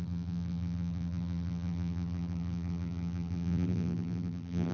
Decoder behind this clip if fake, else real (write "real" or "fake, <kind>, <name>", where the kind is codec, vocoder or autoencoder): fake, vocoder, BigVGAN v2